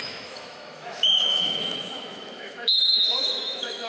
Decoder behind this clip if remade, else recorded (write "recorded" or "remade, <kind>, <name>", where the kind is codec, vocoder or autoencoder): remade, autoencoder, DAC-VAE